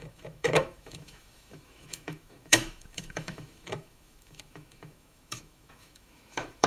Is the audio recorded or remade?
remade